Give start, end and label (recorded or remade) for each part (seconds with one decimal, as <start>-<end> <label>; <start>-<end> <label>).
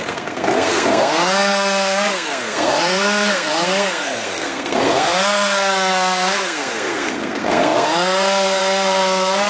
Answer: 0.0-9.5 remade